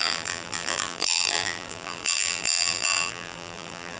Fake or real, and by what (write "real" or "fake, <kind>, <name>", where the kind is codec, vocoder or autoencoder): fake, vocoder, BigVGAN v2